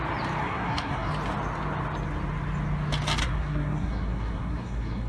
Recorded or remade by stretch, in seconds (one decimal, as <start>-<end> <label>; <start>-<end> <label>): 0.0-0.4 recorded; 0.4-1.1 remade; 1.1-3.2 recorded; 3.2-5.1 remade

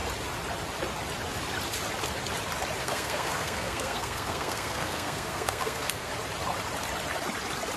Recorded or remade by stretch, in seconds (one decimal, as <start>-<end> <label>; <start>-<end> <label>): 0.0-2.8 recorded; 2.8-6.1 remade; 6.1-7.8 recorded